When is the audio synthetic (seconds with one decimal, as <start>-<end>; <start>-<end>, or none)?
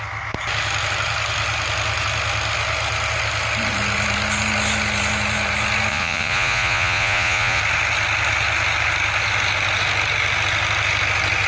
5.9-7.6